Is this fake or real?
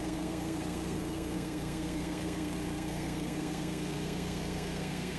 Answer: fake